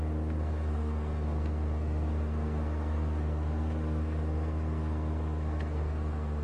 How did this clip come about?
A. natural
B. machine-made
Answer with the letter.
B